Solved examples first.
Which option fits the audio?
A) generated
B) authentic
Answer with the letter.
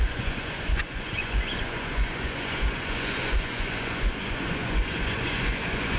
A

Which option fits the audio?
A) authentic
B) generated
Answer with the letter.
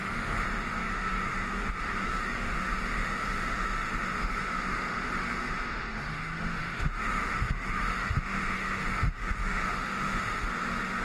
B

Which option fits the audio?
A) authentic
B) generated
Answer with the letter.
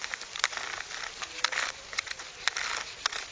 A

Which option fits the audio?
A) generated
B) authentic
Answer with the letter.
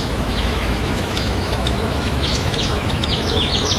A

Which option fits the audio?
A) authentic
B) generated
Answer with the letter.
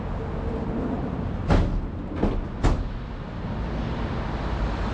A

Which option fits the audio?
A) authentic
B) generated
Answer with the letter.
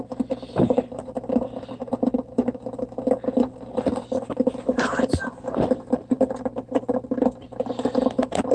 B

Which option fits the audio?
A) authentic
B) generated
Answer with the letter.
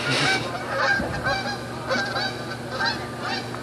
A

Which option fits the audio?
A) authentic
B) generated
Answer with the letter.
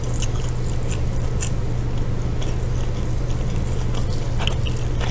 A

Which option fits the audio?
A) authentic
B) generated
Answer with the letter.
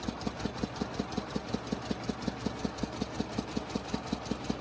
A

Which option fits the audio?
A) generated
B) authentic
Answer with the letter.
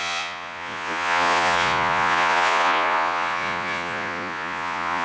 A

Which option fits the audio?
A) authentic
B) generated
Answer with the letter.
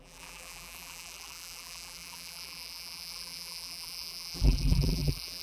B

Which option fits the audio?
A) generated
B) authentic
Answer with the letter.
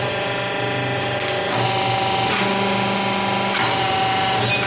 B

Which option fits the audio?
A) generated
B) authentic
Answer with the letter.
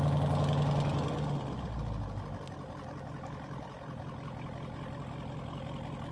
B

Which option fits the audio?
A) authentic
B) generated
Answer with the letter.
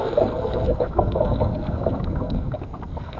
B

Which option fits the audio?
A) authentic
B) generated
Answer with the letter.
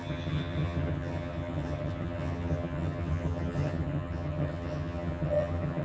B